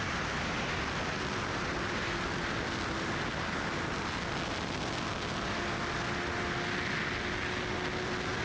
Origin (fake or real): real